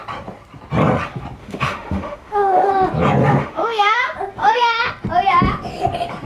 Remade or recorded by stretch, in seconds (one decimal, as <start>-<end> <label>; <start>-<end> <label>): 0.0-1.4 recorded; 1.4-2.7 remade; 2.7-3.4 recorded; 3.4-4.0 remade; 4.0-4.4 recorded; 4.4-4.9 remade; 4.9-6.2 recorded